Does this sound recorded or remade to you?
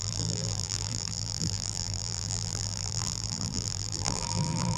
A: remade